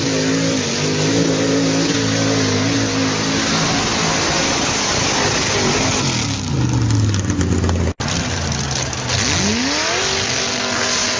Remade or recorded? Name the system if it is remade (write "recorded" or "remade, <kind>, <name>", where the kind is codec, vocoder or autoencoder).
recorded